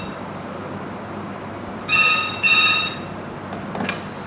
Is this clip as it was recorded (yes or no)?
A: yes